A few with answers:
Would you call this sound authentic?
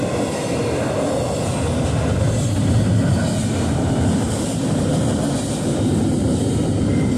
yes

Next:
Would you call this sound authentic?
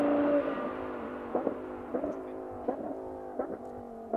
yes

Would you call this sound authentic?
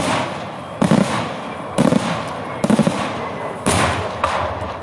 no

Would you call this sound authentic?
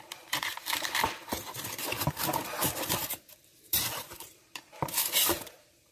no